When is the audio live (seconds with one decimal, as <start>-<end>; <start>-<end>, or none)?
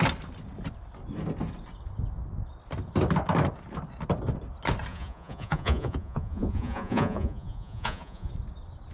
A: 0.0-4.9; 8.3-8.9